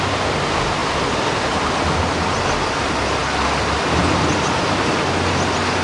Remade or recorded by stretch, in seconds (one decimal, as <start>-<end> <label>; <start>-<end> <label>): 0.0-5.8 recorded